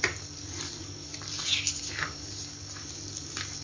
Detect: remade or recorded recorded